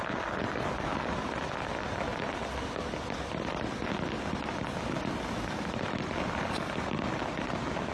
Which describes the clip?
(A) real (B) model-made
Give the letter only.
A